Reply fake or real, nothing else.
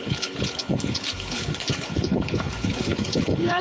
fake